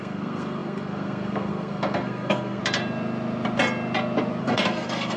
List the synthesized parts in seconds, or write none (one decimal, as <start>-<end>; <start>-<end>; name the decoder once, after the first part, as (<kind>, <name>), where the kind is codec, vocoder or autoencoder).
0.0-2.6 (codec, SNAC); 4.4-5.2